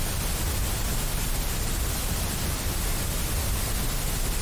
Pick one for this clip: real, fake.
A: real